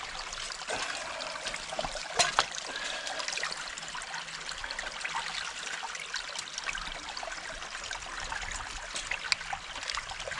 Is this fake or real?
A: real